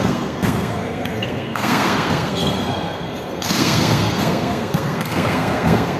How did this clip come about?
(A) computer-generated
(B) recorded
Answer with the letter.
A